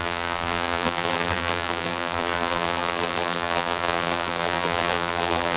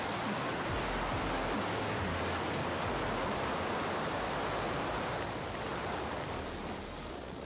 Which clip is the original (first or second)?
second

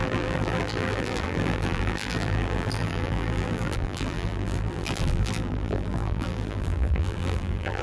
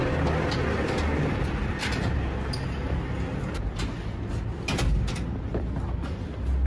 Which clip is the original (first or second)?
second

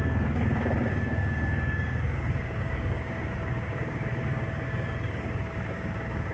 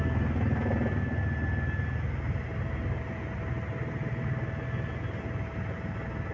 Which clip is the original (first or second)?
second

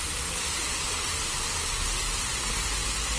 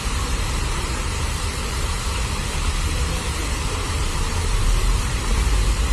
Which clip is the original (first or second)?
first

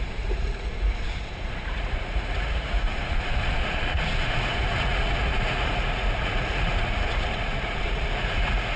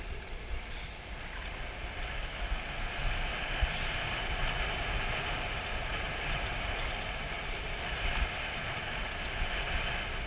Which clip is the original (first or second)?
second